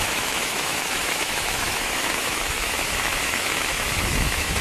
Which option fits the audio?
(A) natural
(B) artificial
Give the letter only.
B